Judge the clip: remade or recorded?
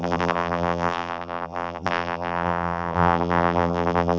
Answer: remade